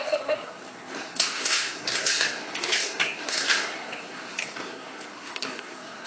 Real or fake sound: fake